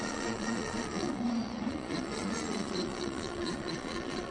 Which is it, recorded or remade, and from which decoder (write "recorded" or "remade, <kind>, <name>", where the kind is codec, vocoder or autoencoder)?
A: remade, vocoder, Vocos